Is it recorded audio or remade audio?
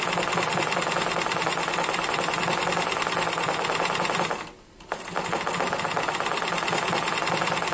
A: recorded